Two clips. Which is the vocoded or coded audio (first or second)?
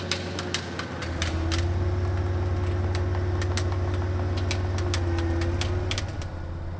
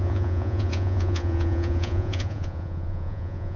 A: second